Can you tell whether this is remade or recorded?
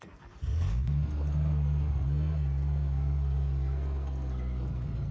remade